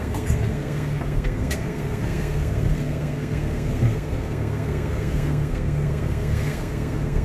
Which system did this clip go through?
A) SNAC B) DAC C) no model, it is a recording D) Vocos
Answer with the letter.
A